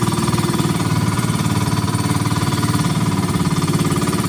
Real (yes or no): no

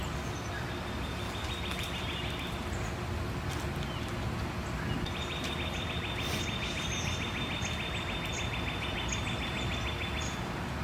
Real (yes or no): yes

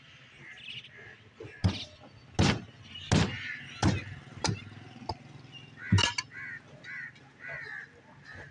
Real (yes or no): yes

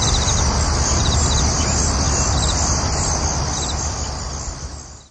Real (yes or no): yes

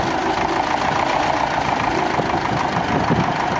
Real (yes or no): yes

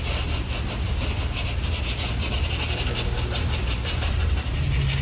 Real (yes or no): yes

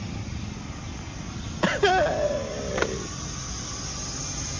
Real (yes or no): yes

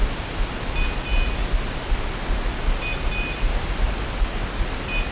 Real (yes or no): yes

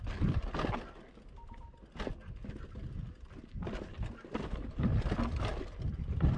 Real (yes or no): yes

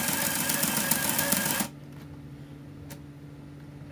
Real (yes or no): yes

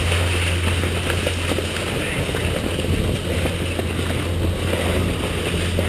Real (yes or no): yes